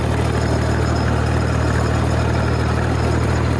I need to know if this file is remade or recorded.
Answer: recorded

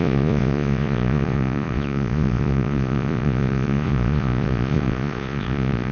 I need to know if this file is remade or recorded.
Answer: remade